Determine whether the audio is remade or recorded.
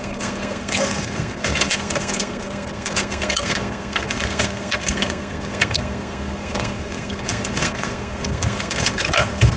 remade